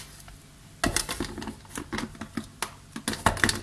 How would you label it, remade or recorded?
recorded